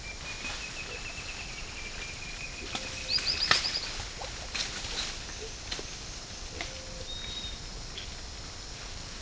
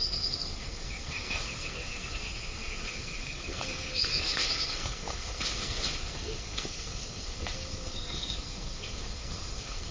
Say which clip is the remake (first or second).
second